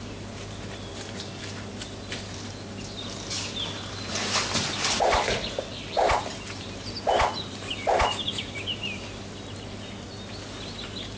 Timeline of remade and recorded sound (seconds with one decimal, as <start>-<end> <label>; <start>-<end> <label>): 0.0-11.2 recorded